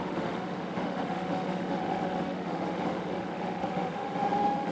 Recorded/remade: remade